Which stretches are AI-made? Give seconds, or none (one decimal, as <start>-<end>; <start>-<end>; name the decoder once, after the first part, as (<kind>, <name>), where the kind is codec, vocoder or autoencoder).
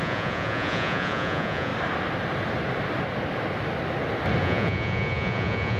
0.0-1.7 (vocoder, Vocos); 4.4-5.8